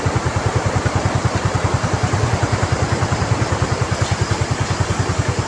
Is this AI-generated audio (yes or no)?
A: no